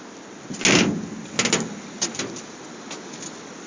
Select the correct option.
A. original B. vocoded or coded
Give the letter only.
A